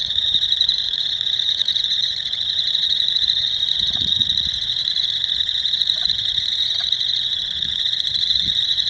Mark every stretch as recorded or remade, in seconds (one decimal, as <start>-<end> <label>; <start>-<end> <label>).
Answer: 0.0-8.9 remade